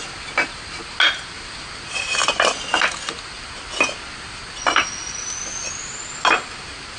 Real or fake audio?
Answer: real